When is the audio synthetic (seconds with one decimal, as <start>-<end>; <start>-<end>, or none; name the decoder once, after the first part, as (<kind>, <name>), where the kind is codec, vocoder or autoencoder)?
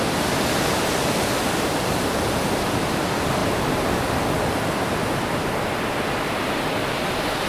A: none